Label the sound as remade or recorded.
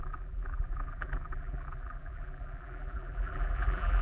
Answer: remade